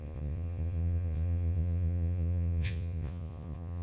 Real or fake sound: fake